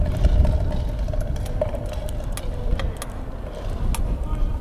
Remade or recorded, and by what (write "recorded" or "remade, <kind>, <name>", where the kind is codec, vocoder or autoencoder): recorded